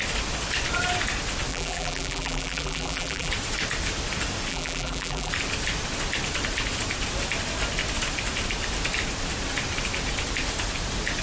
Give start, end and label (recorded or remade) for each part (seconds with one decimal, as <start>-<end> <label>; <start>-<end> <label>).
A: 0.0-1.5 recorded; 1.5-3.3 remade; 3.3-4.5 recorded; 4.5-5.3 remade; 5.3-11.2 recorded